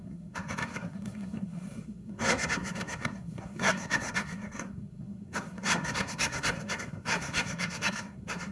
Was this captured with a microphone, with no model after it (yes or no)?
no